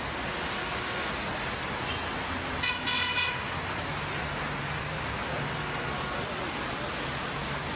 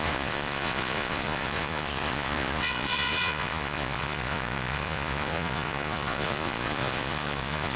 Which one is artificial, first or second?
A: second